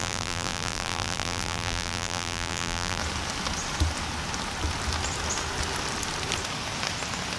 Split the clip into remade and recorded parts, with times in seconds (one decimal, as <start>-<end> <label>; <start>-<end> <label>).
0.0-3.0 remade; 3.0-7.4 recorded